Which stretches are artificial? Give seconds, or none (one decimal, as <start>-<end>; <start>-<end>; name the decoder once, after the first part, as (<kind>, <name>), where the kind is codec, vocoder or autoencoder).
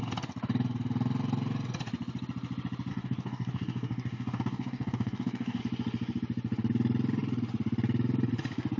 2.9-5.6 (codec, DAC)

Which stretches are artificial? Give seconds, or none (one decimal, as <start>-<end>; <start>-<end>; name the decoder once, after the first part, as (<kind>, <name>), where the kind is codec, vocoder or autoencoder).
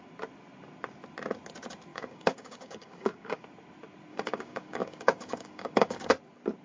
1.9-3.4 (codec, DAC); 4.1-6.1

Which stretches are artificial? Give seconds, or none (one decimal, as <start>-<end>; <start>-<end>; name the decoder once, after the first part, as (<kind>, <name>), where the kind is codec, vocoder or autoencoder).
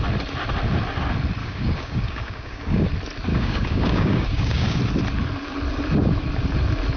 1.4-2.9 (codec, DAC); 3.3-4.8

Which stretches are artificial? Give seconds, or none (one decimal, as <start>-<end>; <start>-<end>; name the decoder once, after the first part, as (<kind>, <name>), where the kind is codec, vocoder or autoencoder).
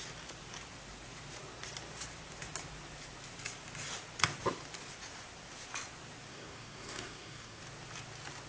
6.3-7.6 (codec, DAC)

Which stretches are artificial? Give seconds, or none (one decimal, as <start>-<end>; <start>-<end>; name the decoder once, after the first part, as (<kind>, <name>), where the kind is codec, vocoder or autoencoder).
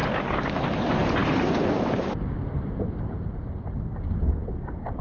0.0-0.6 (codec, DAC)